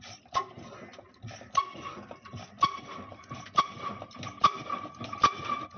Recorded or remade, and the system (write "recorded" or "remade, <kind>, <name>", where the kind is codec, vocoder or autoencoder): recorded